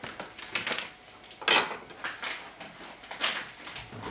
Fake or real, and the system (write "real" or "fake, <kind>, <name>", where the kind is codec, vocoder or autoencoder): real